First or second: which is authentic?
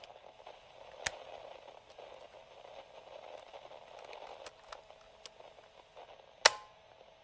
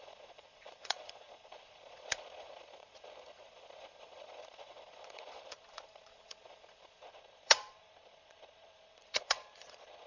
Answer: first